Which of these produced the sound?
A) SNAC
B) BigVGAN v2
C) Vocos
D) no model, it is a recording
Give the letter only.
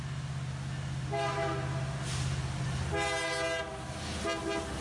D